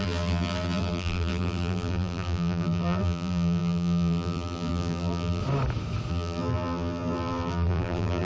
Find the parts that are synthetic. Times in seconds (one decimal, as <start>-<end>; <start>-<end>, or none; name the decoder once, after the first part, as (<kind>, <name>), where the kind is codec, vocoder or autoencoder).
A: 0.0-5.4 (vocoder, BigVGAN v2); 6.1-8.2